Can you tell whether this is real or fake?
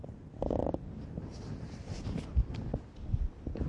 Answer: real